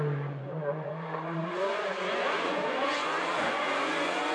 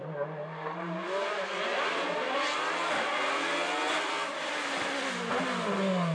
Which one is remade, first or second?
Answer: first